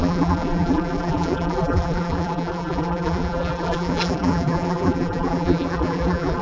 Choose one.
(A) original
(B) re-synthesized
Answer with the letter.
B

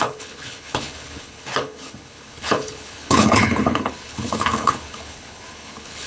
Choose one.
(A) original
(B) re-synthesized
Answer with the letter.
B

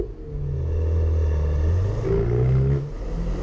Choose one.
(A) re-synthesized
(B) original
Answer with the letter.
B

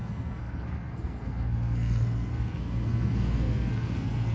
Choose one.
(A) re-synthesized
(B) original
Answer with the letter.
A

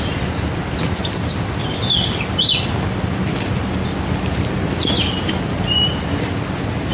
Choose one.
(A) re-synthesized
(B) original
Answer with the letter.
B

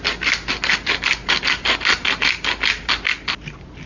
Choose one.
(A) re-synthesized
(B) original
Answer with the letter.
B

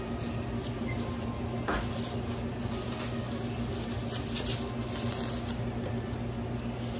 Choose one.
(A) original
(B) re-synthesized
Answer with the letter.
A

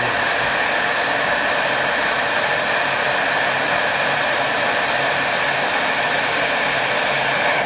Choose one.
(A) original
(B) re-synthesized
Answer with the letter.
A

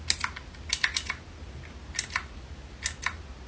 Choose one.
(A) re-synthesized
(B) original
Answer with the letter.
B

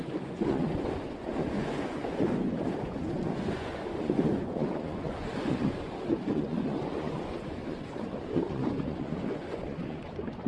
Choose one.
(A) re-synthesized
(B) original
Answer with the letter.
A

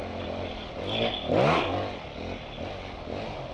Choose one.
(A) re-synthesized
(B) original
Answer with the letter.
B